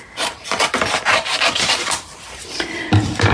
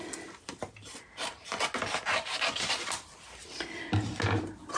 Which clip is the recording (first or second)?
second